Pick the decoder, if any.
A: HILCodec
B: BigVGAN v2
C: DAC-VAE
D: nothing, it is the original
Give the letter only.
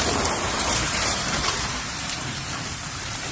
B